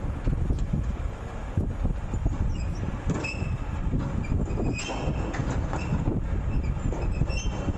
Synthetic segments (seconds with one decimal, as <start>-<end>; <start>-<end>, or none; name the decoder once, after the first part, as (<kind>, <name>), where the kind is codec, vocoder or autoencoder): 2.2-3.5 (vocoder, BigVGAN v2)